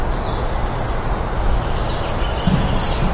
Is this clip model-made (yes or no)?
no